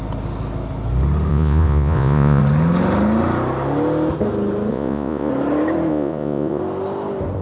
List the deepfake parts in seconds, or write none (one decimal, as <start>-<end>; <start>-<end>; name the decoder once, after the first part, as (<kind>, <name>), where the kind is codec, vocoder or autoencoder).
1.3-2.4 (vocoder, Vocos); 4.7-5.3; 5.9-6.6